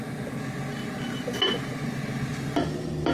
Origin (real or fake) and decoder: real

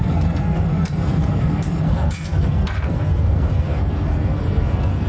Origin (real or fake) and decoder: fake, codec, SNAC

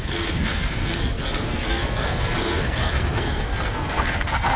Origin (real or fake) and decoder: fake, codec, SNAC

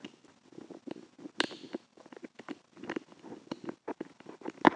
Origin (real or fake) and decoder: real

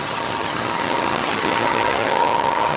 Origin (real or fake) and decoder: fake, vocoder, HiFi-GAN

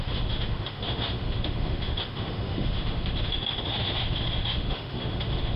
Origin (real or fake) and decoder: fake, autoencoder, DAC-VAE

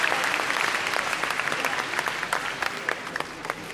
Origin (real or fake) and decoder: real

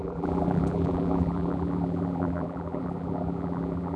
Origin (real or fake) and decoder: fake, vocoder, BigVGAN v2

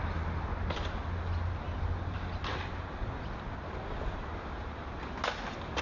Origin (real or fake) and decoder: real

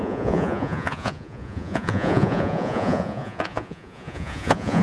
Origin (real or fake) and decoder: fake, vocoder, Vocos